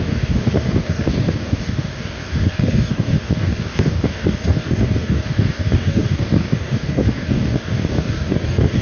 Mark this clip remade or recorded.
remade